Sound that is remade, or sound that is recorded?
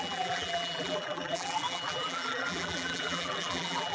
remade